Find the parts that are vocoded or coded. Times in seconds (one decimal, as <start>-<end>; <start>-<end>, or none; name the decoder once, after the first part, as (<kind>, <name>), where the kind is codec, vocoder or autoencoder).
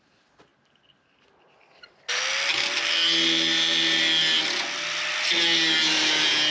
none